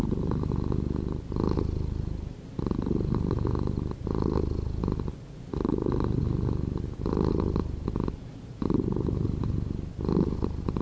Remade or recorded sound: recorded